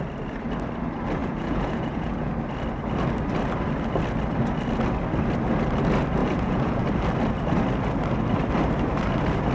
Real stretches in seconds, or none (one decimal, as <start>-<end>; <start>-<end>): 0.0-1.2; 2.3-6.2; 6.8-9.5